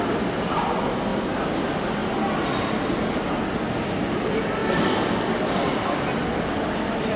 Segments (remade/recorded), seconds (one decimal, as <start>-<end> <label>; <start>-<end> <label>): 0.0-7.2 recorded